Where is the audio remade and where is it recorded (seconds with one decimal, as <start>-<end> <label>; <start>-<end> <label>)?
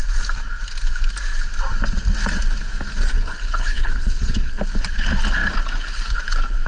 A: 0.0-3.1 recorded; 3.1-4.6 remade; 4.6-6.7 recorded